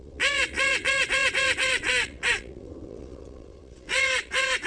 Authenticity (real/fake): fake